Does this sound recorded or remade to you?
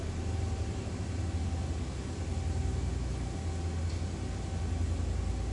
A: recorded